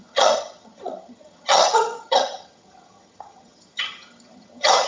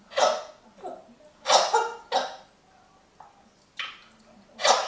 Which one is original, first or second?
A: second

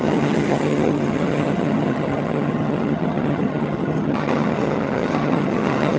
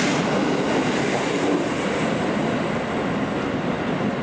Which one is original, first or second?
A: second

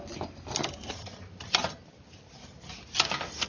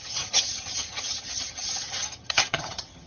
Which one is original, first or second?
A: first